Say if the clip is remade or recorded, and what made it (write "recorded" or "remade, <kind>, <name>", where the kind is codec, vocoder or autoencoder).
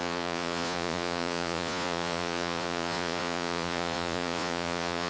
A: remade, vocoder, Vocos